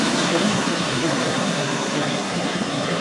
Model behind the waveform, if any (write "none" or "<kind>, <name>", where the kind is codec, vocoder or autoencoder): codec, SNAC